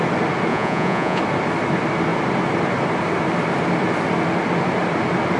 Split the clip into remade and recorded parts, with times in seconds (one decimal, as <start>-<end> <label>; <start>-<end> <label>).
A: 0.0-0.5 recorded; 0.5-1.2 remade; 1.2-5.4 recorded